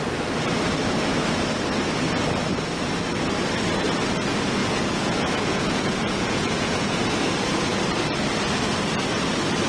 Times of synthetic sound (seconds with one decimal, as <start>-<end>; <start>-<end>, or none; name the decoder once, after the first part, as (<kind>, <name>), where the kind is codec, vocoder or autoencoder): 4.6-6.9 (vocoder, Vocos)